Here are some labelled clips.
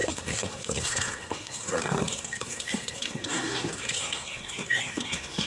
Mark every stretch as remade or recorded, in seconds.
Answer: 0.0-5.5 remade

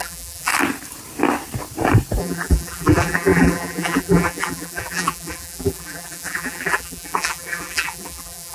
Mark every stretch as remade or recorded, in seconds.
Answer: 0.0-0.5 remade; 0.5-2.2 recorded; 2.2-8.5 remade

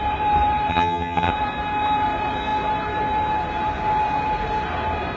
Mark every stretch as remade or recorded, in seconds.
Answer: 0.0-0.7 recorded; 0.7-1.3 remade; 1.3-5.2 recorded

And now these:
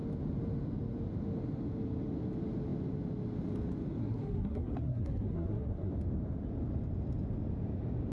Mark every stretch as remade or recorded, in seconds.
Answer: 0.0-4.0 recorded; 4.0-5.9 remade; 5.9-8.1 recorded

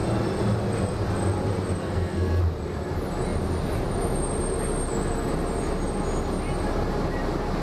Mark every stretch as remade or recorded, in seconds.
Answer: 0.0-1.8 recorded; 1.8-2.4 remade; 2.4-7.6 recorded

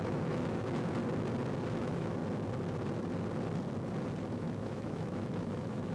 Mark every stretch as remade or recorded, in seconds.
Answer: 0.0-1.0 remade; 1.0-1.8 recorded; 1.8-2.2 remade; 2.2-4.3 recorded; 4.3-5.9 remade